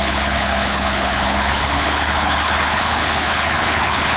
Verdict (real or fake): fake